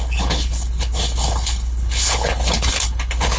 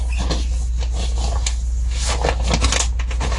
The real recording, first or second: second